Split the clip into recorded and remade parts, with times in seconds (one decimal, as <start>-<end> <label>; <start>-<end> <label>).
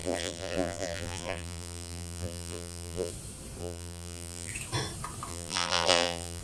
0.0-3.1 remade; 3.1-3.6 recorded; 3.6-4.5 remade; 4.5-5.3 recorded; 5.3-6.4 remade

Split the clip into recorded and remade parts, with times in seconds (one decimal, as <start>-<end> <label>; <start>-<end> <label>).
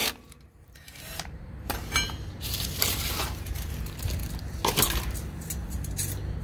0.0-3.8 remade; 3.8-6.4 recorded